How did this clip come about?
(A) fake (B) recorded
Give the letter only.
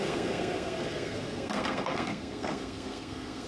A